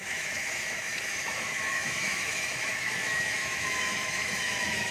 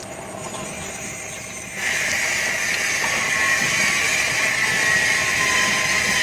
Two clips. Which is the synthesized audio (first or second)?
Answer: first